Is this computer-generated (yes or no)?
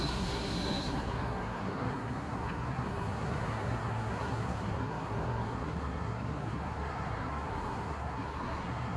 yes